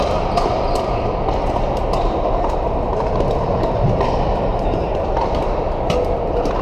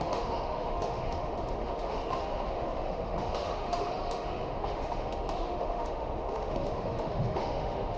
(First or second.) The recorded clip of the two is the first